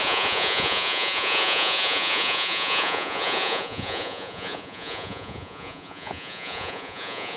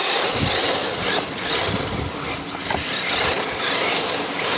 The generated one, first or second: first